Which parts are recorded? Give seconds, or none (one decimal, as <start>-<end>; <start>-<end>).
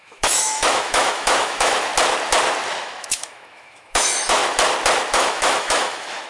1.9-2.8; 4.4-5.1